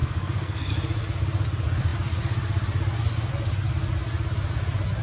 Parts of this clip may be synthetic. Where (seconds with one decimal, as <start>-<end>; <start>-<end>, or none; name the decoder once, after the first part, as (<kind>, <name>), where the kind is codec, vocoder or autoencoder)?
0.0-0.7 (codec, SNAC)